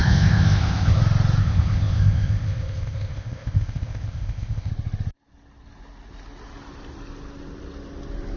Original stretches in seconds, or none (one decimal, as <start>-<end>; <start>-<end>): 1.0-1.4; 4.7-8.4